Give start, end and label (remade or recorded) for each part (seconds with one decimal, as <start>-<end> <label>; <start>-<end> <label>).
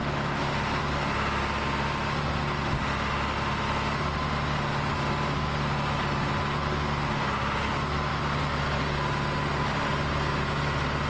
0.0-0.5 remade; 0.5-11.1 recorded